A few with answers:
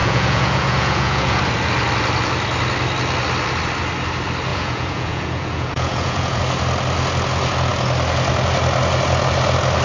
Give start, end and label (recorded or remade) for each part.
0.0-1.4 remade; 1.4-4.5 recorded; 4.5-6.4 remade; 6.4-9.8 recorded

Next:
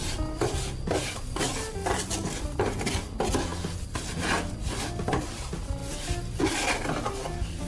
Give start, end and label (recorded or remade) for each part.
0.0-7.7 recorded

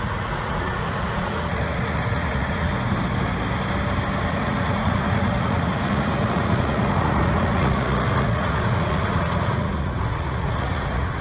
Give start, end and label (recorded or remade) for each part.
0.0-2.7 remade; 2.7-4.3 recorded; 4.3-11.2 remade